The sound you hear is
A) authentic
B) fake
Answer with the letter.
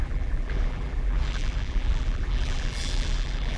B